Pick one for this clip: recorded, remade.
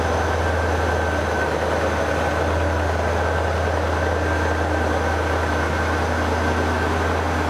recorded